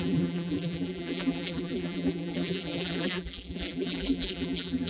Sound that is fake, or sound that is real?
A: fake